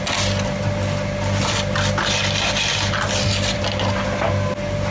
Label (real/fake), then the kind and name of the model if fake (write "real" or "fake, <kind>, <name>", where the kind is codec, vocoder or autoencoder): real